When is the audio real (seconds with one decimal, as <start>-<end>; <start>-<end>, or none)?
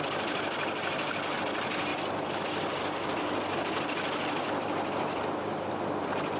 0.0-6.4